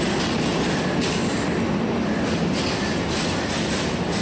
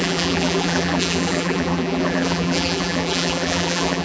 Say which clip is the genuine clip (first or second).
first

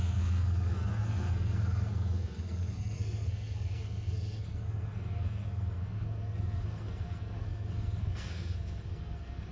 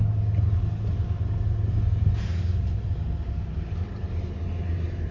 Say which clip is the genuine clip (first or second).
second